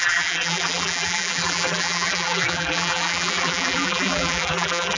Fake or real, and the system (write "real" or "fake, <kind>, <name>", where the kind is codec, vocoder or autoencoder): fake, vocoder, BigVGAN v2